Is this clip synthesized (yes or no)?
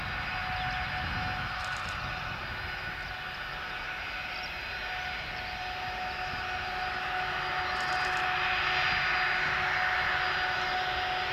no